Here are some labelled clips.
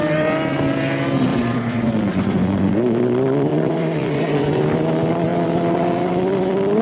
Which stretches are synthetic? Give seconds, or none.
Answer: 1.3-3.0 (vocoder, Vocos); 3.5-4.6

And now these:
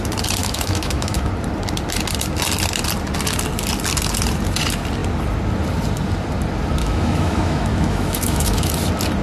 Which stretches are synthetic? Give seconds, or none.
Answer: 0.4-1.3 (autoencoder, DAC-VAE); 6.8-8.7

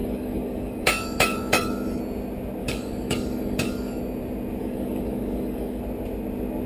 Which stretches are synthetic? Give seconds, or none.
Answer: 0.0-2.0 (codec, DAC); 2.6-4.0; 4.6-5.8

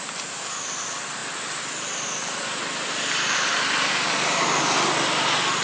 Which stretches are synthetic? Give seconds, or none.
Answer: 1.2-4.6 (vocoder, BigVGAN v2)